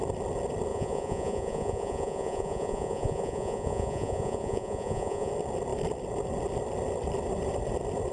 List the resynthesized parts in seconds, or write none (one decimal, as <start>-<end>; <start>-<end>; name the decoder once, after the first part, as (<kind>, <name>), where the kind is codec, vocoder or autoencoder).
0.7-5.3 (vocoder, Vocos)